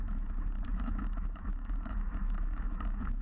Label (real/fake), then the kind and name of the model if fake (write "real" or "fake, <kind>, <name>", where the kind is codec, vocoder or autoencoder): fake, autoencoder, DAC-VAE